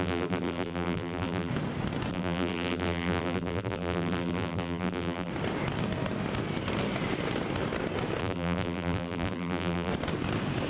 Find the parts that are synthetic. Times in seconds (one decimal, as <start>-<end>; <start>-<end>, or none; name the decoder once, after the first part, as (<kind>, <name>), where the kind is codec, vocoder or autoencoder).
0.0-1.5 (vocoder, BigVGAN v2); 2.1-5.3; 8.2-9.9